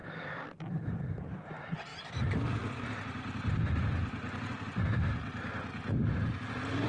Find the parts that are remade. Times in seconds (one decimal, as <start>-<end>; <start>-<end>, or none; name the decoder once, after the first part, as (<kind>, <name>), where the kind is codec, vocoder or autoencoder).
none

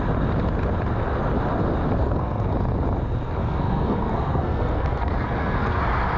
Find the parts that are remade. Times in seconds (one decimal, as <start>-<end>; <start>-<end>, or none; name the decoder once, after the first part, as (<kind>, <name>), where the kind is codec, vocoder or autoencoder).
2.0-2.5 (codec, SNAC); 3.4-5.8

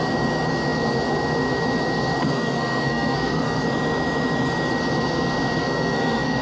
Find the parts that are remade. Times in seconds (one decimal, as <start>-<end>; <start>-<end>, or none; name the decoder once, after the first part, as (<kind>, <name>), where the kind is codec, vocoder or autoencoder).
2.2-3.6 (codec, SNAC); 5.6-6.4

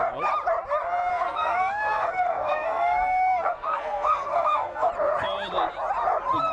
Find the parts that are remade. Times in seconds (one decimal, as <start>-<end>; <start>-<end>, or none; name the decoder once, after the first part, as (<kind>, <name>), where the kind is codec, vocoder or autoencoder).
1.1-4.9 (codec, SNAC)

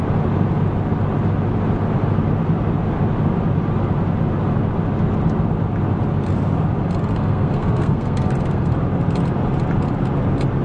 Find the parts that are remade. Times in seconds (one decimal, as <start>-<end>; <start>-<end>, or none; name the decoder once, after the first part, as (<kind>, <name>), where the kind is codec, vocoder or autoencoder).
7.1-8.7 (codec, SNAC)